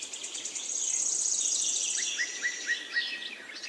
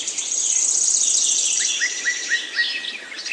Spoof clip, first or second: second